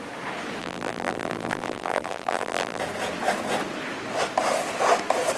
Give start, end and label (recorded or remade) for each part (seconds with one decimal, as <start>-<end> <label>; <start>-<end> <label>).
0.0-0.6 recorded; 0.6-2.8 remade; 2.8-5.4 recorded